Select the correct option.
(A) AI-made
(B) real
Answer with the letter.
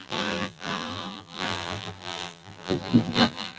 A